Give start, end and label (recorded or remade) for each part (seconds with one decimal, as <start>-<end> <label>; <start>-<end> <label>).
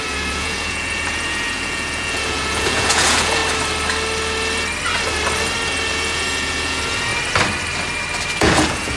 0.0-3.4 remade; 3.4-5.9 recorded; 5.9-7.1 remade; 7.1-8.4 recorded; 8.4-9.0 remade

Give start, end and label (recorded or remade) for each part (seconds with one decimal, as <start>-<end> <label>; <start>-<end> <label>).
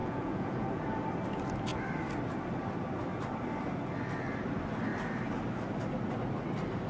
0.0-0.8 remade; 0.8-6.9 recorded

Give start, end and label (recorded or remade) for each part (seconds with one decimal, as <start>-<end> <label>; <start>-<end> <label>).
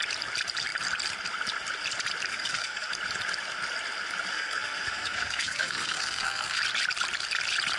0.0-2.3 recorded; 2.3-2.9 remade; 2.9-4.3 recorded; 4.3-6.6 remade; 6.6-7.8 recorded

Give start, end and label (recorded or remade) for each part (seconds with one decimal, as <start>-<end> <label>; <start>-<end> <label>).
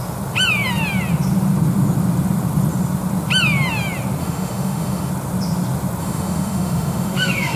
0.0-4.2 recorded; 4.2-5.1 remade; 5.1-6.0 recorded; 6.0-7.6 remade